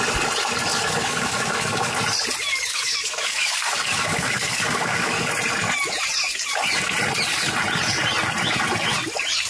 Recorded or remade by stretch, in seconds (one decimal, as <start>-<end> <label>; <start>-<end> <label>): 0.0-0.7 recorded; 0.7-2.0 remade; 2.0-2.7 recorded; 2.7-5.3 remade; 5.3-9.5 recorded